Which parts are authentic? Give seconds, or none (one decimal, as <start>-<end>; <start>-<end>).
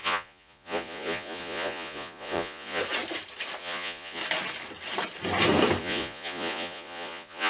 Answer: 2.8-3.6; 4.2-5.8